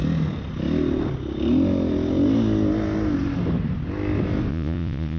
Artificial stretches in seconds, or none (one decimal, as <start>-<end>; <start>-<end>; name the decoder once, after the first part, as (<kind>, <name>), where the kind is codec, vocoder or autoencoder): 4.5-5.2 (vocoder, Vocos)